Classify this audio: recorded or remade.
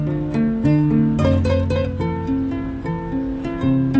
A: recorded